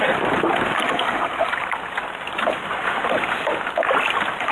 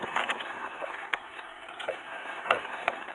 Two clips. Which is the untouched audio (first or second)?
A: first